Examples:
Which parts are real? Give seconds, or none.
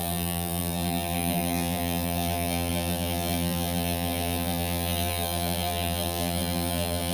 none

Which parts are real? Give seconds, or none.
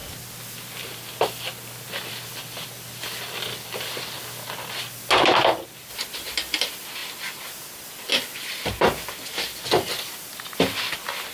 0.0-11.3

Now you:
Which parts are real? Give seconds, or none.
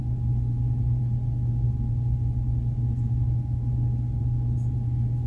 0.0-5.3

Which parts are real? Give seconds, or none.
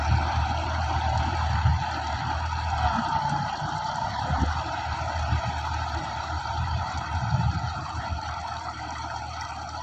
1.7-2.9